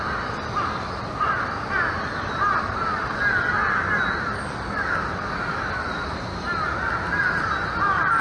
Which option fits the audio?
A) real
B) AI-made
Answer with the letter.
A